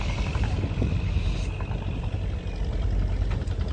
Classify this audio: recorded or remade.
recorded